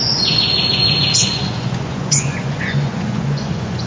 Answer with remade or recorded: remade